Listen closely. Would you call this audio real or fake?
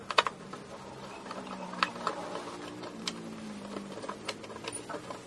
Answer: real